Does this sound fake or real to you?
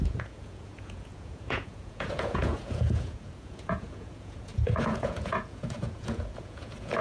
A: fake